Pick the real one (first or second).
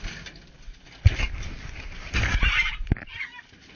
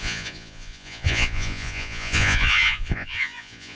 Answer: first